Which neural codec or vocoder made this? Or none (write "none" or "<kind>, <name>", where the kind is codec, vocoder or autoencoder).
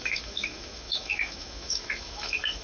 autoencoder, DAC-VAE